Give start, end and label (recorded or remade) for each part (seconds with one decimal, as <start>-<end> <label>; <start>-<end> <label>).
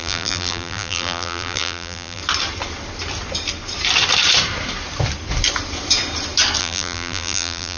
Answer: 0.0-2.2 remade; 2.2-6.6 recorded; 6.6-7.8 remade